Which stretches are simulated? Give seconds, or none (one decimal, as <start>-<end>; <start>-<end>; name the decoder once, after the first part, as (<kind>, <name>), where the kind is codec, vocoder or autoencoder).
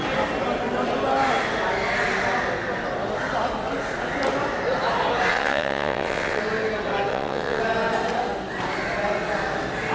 5.3-6.4 (vocoder, WaveNeXt); 7.1-7.6